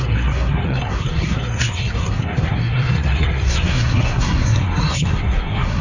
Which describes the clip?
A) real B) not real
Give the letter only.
B